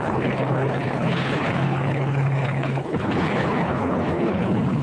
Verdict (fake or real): fake